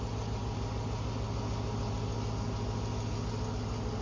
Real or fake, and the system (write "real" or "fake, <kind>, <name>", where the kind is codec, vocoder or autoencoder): real